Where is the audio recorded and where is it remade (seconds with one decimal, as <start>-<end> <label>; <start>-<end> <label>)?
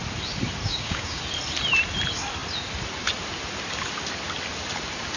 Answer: 0.0-0.6 recorded; 0.6-1.2 remade; 1.2-5.2 recorded